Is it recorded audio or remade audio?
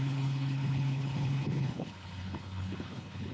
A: remade